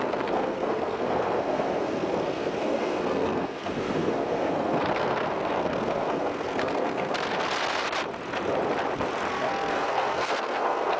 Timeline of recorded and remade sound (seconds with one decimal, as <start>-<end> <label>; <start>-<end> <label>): 0.0-7.3 remade; 7.3-9.3 recorded; 9.3-11.0 remade